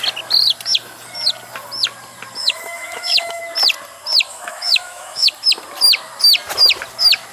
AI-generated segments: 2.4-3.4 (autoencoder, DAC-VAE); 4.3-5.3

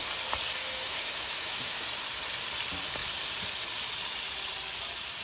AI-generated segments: 0.6-1.8 (autoencoder, DAC-VAE)

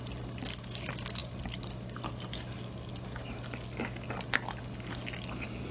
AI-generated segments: none

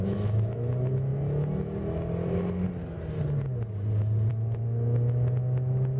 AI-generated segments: 0.0-1.1 (autoencoder, DAC-VAE); 4.3-6.0

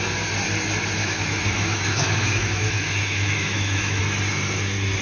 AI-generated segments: 1.0-4.0 (autoencoder, DAC-VAE)

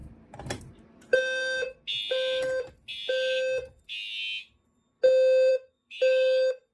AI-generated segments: 5.5-6.0 (autoencoder, DAC-VAE)